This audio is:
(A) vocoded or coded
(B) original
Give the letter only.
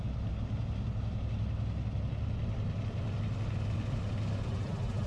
B